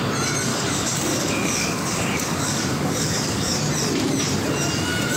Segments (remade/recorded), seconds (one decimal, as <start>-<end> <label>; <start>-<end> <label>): 0.0-0.5 recorded; 0.5-3.6 remade; 3.6-5.2 recorded